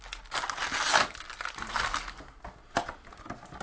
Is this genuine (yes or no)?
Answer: yes